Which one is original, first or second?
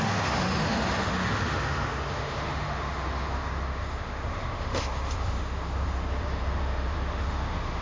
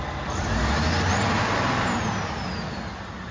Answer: second